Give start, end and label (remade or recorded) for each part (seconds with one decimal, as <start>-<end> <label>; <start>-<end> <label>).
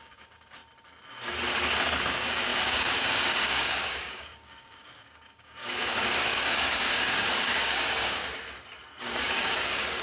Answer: 0.0-0.6 remade; 0.6-2.0 recorded; 2.0-8.2 remade; 8.2-9.0 recorded; 9.0-10.0 remade